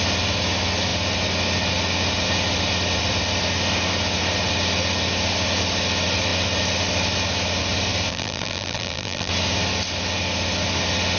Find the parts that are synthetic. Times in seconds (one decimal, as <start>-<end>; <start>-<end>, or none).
8.1-9.3